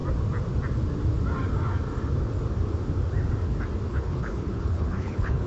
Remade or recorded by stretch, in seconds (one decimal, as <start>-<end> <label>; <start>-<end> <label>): 0.0-3.9 recorded; 3.9-5.5 remade